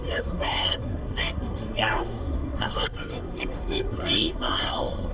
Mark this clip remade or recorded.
remade